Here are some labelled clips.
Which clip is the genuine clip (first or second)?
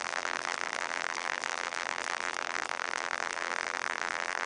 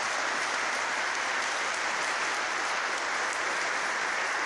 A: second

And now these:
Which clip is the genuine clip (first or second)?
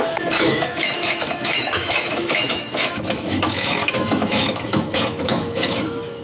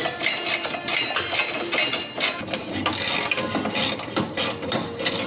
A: second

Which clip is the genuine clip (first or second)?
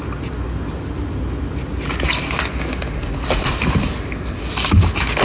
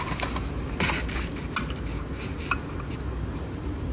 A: first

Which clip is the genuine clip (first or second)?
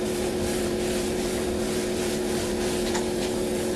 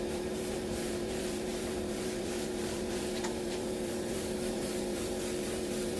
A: first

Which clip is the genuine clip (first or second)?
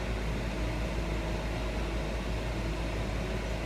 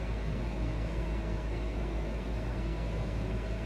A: first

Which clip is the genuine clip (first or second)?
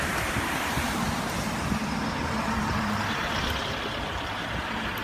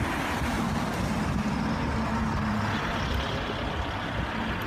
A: second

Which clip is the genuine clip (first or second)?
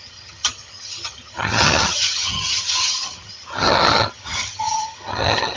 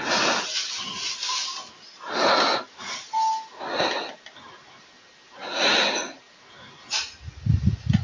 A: second